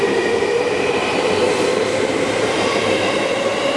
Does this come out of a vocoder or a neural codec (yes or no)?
yes